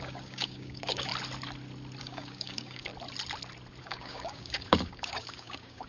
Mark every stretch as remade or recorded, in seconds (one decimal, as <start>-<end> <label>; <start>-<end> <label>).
0.0-1.1 remade; 1.1-2.0 recorded; 2.0-2.9 remade; 2.9-3.8 recorded; 3.8-5.9 remade